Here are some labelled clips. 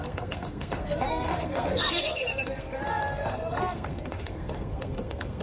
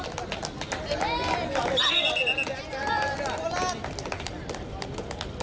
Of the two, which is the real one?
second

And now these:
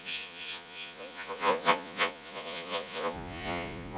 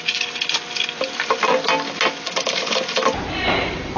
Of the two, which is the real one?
second